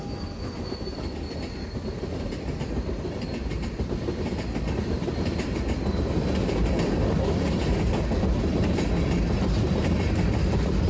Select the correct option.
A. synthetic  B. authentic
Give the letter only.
B